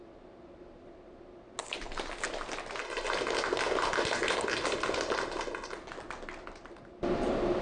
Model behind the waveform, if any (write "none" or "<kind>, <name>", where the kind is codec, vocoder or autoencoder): none